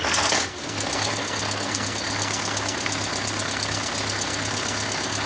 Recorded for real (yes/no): no